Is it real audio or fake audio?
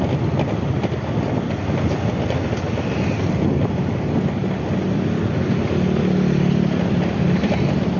real